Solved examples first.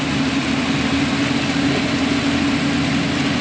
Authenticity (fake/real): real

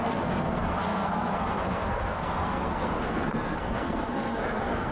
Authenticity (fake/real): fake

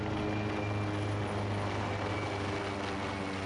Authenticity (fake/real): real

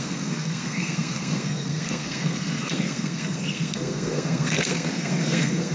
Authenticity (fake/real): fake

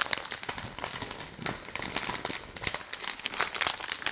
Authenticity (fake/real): real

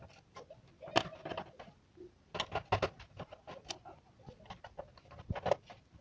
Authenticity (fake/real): real